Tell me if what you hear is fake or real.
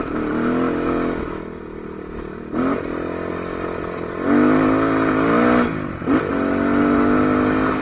real